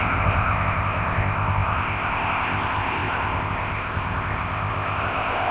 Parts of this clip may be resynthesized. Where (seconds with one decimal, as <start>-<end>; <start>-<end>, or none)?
0.0-5.5